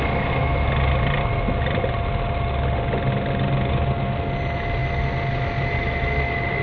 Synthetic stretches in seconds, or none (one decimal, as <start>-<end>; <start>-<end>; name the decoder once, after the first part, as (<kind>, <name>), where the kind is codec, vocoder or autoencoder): none